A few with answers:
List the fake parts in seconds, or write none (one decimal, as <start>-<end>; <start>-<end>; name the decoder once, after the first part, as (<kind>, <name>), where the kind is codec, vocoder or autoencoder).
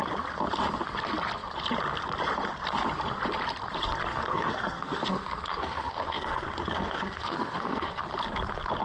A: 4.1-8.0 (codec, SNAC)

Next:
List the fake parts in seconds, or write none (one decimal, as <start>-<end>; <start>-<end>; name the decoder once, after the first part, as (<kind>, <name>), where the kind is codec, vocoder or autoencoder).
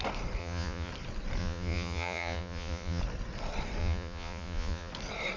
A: 0.4-0.9 (vocoder, Vocos); 1.4-3.0; 3.8-4.9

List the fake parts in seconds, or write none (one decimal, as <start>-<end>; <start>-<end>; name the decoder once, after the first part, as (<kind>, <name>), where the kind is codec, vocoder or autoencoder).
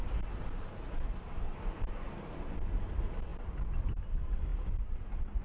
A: none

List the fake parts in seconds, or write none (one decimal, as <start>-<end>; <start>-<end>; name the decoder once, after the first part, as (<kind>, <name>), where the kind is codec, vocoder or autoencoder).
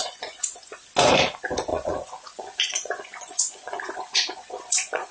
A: 0.0-0.8 (vocoder, Vocos); 1.7-5.1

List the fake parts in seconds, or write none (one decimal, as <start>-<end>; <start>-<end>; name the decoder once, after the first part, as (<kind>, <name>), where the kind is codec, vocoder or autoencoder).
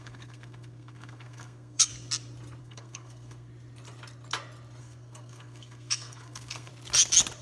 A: 0.0-1.9 (codec, SNAC); 2.6-3.5; 4.8-6.7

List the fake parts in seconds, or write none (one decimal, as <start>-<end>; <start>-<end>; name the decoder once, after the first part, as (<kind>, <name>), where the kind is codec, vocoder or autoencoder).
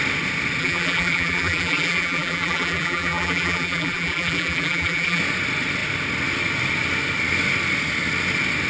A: 0.6-5.2 (vocoder, BigVGAN v2)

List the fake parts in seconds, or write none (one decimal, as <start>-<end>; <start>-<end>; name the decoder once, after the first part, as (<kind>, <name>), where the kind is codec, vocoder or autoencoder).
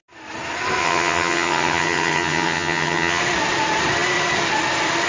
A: 0.8-3.2 (vocoder, HiFi-GAN)